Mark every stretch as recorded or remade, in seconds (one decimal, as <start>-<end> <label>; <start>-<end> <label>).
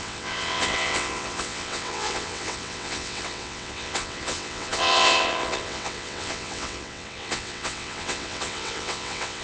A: 0.0-9.4 remade